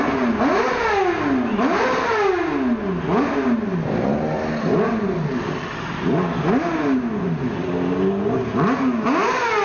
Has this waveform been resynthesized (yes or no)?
no